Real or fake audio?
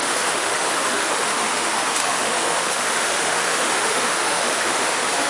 fake